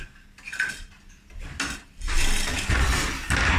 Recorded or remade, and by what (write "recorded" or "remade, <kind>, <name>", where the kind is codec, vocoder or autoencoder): recorded